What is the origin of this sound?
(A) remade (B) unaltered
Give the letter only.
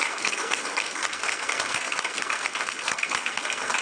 A